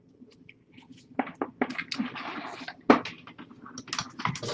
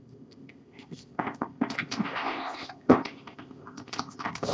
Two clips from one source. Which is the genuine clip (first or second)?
first